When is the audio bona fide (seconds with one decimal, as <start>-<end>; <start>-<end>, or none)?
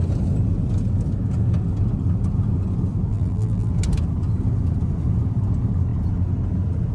0.0-3.1; 3.7-6.9